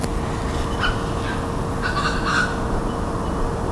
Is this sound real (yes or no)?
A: yes